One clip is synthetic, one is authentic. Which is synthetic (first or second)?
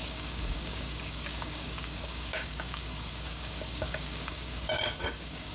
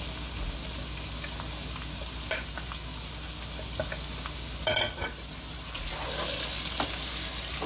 first